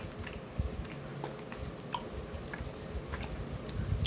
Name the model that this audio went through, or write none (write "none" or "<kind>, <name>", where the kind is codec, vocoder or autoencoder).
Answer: none